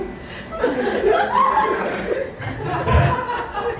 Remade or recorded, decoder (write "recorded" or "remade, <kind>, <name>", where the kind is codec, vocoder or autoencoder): recorded